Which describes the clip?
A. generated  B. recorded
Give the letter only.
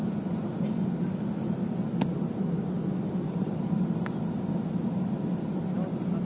B